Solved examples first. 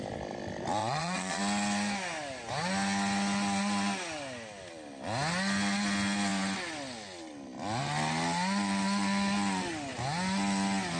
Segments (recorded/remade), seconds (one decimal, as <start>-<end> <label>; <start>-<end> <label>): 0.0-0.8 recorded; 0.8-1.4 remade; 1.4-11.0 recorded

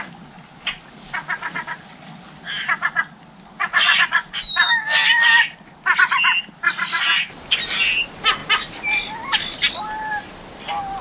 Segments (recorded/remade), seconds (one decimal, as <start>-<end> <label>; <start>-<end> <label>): 0.0-3.6 recorded; 3.6-4.4 remade; 4.4-11.0 recorded

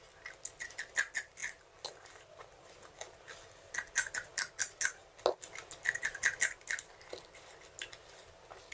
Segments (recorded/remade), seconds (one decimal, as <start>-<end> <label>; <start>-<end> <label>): 0.0-8.7 recorded

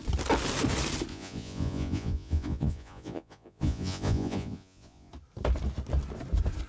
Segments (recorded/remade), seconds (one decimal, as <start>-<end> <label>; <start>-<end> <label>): 0.0-1.1 recorded; 1.1-5.1 remade; 5.1-6.7 recorded

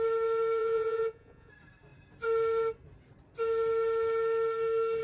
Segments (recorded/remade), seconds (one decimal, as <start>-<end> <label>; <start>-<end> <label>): 0.0-0.6 recorded; 0.6-1.5 remade; 1.5-5.0 recorded